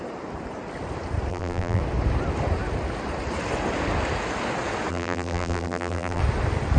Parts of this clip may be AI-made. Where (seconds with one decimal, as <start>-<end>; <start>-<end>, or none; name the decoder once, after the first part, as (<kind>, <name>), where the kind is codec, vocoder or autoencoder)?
1.3-1.8 (vocoder, BigVGAN v2); 4.9-6.2